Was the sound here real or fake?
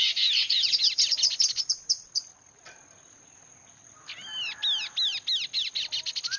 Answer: real